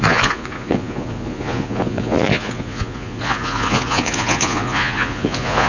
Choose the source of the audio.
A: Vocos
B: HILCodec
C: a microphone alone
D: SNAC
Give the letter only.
A